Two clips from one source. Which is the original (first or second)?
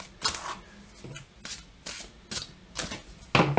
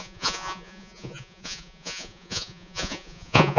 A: first